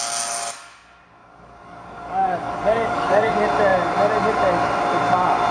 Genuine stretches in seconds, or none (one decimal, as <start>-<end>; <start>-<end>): 0.0-1.2; 3.3-5.5